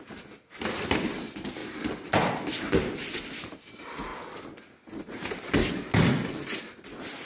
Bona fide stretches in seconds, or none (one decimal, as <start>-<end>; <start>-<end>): 0.0-7.3